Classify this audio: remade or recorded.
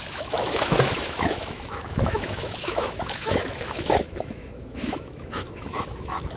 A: remade